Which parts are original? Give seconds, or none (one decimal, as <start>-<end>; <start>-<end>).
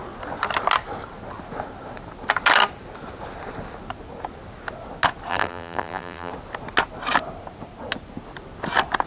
0.0-5.3; 6.3-9.1